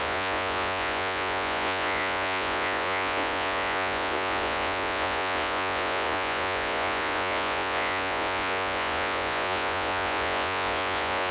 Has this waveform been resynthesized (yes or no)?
yes